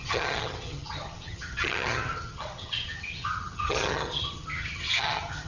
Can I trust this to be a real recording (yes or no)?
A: no